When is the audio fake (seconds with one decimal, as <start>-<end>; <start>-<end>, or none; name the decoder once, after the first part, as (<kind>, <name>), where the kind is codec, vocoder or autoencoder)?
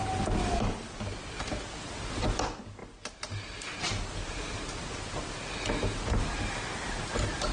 0.4-1.1 (vocoder, BigVGAN v2)